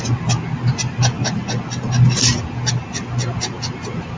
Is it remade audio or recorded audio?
recorded